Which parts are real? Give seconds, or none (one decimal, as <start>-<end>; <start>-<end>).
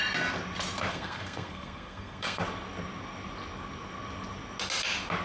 0.0-0.9; 2.4-5.2